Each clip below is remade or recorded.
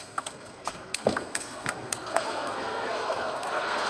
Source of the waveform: remade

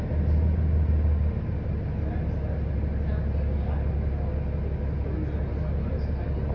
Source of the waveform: recorded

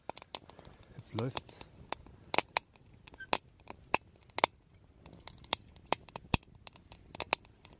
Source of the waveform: recorded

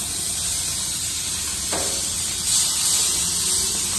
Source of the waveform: recorded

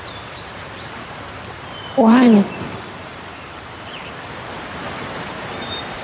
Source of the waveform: remade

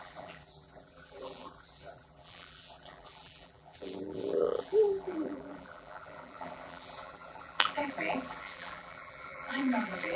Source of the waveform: remade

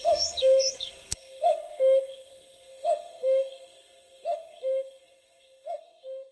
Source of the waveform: remade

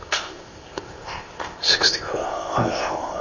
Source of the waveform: remade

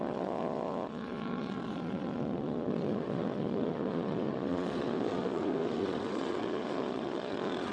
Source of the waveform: remade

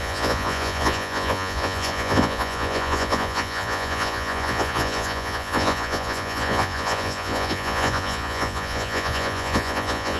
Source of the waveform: remade